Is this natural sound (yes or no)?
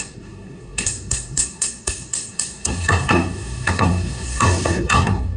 no